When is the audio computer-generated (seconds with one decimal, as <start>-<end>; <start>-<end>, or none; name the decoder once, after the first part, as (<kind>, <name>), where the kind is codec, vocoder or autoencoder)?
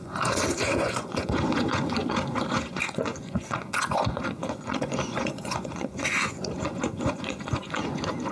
0.0-8.3 (vocoder, Vocos)